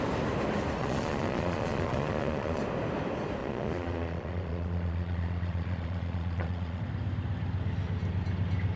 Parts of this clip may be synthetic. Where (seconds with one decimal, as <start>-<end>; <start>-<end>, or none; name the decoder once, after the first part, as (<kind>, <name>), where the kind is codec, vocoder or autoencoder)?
0.8-2.6 (vocoder, Vocos); 3.4-6.8